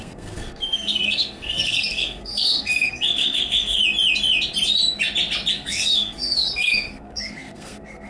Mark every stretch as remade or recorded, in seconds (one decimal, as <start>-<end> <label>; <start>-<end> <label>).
0.0-3.8 remade; 3.8-5.5 recorded; 5.5-8.1 remade